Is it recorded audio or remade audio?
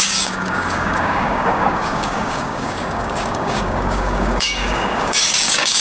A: remade